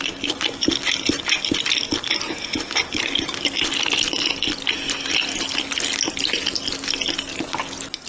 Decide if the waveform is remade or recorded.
recorded